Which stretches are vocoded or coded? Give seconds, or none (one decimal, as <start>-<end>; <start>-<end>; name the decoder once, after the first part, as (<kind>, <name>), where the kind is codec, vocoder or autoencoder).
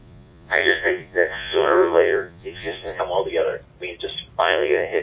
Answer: 0.0-3.0 (vocoder, Vocos); 4.4-5.0